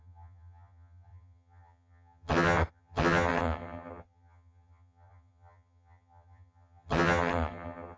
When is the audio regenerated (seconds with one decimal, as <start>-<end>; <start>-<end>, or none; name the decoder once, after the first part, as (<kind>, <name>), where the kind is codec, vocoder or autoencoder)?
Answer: 0.0-8.0 (vocoder, HiFi-GAN)